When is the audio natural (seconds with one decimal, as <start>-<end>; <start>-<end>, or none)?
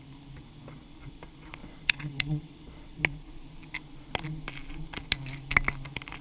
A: 0.0-1.6; 3.0-6.2